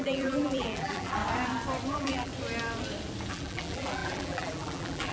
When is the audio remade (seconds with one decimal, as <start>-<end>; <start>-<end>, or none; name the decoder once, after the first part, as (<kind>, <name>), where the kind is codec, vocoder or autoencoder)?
0.0-1.2 (vocoder, BigVGAN v2); 1.9-2.3; 3.3-5.1